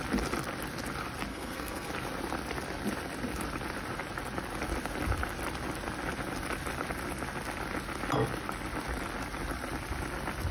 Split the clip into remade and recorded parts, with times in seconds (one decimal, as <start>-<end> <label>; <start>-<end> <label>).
0.0-1.3 recorded; 1.3-1.9 remade; 1.9-10.5 recorded